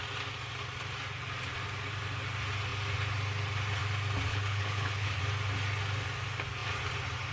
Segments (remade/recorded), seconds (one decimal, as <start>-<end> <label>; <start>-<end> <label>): 0.0-4.3 recorded; 4.3-5.2 remade; 5.2-7.3 recorded